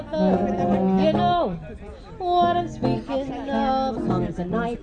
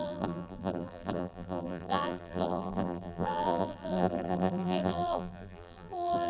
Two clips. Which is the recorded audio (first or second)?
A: first